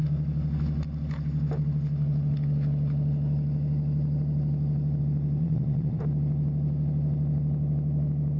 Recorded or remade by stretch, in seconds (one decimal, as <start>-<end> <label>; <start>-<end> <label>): 0.0-5.4 recorded; 5.4-6.0 remade; 6.0-8.4 recorded